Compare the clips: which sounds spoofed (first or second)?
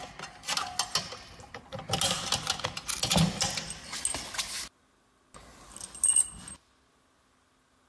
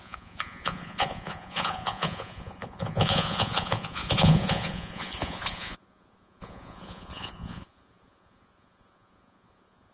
second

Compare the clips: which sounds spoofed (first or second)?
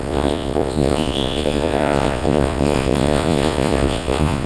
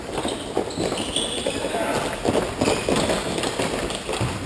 first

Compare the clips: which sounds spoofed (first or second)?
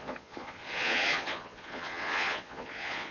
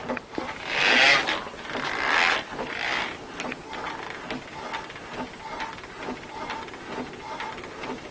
first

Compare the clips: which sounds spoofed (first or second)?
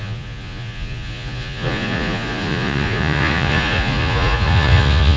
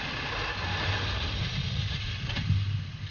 first